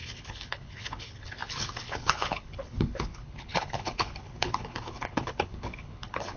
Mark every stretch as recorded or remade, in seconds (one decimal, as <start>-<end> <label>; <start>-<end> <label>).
0.0-6.4 remade